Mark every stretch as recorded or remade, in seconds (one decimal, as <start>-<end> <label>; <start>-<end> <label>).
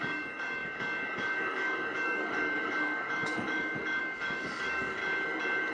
0.0-5.0 remade; 5.0-5.7 recorded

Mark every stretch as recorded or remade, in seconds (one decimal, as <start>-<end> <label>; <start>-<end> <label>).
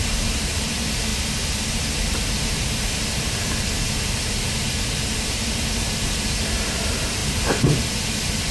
0.0-1.1 remade; 1.1-1.7 recorded; 1.7-8.5 remade